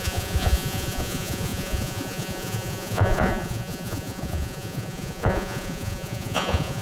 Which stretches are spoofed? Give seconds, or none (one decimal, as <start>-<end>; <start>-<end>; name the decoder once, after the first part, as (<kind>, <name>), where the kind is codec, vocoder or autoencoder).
0.0-6.8 (vocoder, Vocos)